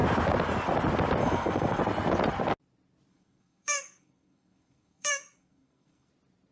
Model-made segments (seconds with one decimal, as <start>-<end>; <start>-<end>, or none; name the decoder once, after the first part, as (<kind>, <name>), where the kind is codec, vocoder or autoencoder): 1.2-1.8 (codec, SNAC); 3.1-6.1